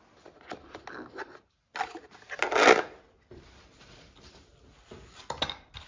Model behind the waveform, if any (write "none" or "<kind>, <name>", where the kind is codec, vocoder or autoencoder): none